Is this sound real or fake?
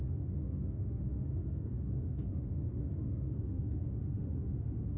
fake